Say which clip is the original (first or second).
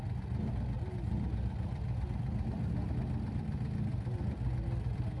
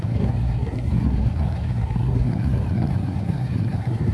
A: first